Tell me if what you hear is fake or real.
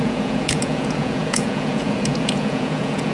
fake